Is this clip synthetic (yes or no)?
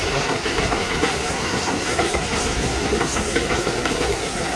yes